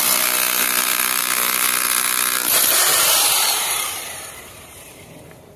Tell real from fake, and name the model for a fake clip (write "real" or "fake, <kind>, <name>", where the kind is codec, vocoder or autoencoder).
fake, vocoder, BigVGAN v2